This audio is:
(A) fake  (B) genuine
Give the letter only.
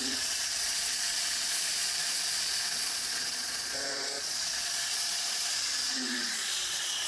A